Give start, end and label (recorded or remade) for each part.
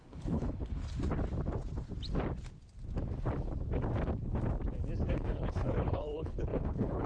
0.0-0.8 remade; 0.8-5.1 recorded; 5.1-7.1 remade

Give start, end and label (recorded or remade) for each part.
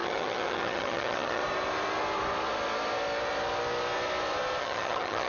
0.0-1.4 remade; 1.4-4.6 recorded; 4.6-5.3 remade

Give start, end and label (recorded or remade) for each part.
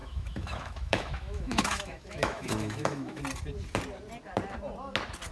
0.0-3.2 remade; 3.2-5.3 recorded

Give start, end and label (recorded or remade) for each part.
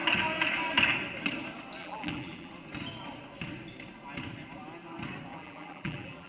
0.0-1.8 recorded; 1.8-2.5 remade; 2.5-5.3 recorded; 5.3-6.3 remade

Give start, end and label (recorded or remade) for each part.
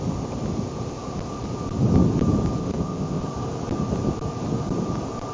0.0-2.6 recorded; 2.6-3.2 remade; 3.2-5.3 recorded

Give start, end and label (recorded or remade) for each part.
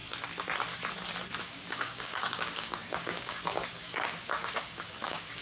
0.0-1.4 recorded; 1.4-5.4 remade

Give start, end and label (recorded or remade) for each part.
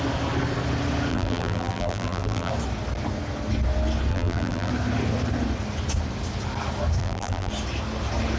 0.0-1.1 recorded; 1.1-2.5 remade; 2.5-4.1 recorded; 4.1-4.7 remade; 4.7-7.0 recorded; 7.0-7.5 remade; 7.5-8.4 recorded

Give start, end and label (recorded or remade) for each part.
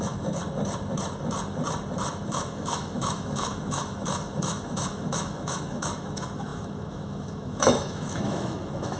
0.0-0.4 remade; 0.4-2.3 recorded; 2.3-9.0 remade